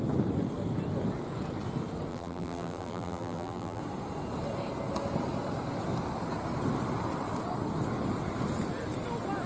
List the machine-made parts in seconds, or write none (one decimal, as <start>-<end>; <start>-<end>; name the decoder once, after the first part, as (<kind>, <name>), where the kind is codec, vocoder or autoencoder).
2.1-3.8 (vocoder, BigVGAN v2)